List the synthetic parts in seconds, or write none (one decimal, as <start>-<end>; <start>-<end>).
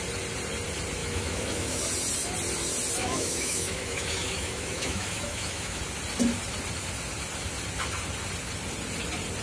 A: 1.0-1.8; 3.0-5.8